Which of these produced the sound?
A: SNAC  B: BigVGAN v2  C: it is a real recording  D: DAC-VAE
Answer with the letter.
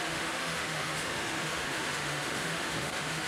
D